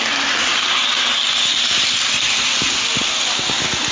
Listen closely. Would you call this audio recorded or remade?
recorded